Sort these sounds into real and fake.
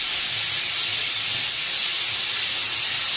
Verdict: real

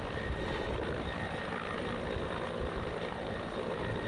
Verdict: real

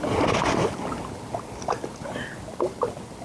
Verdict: real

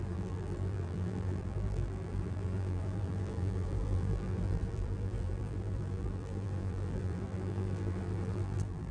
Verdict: fake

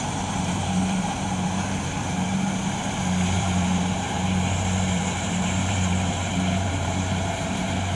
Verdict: fake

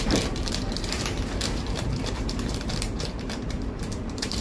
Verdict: fake